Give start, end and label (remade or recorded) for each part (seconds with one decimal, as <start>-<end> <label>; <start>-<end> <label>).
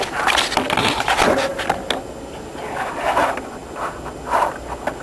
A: 0.0-5.0 recorded